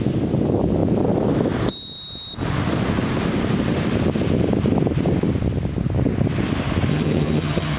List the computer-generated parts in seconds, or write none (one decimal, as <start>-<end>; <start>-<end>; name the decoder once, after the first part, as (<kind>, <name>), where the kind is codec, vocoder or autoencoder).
6.9-7.8 (vocoder, HiFi-GAN)